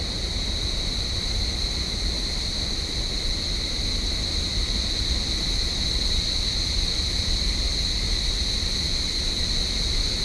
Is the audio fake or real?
real